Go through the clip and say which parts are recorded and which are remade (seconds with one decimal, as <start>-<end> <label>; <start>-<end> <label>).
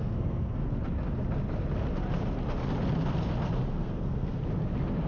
0.0-0.6 remade; 0.6-3.7 recorded; 3.7-4.4 remade; 4.4-5.1 recorded